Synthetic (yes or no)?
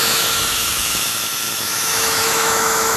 yes